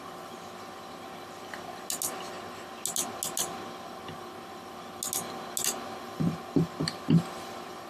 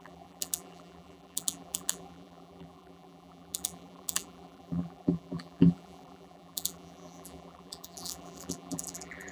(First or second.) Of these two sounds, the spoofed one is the second